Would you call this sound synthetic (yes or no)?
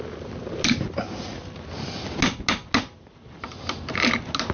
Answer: no